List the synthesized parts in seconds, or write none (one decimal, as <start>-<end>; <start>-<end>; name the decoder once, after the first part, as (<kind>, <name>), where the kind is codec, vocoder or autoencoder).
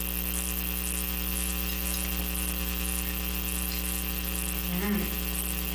none